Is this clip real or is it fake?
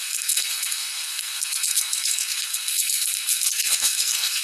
fake